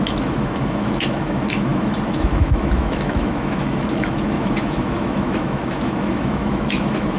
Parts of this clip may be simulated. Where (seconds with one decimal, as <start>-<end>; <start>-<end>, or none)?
0.0-7.2